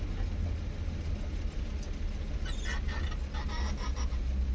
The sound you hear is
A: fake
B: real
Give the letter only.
B